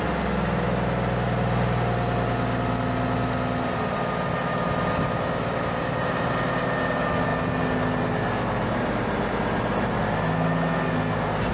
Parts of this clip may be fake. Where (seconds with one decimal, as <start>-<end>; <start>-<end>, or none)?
none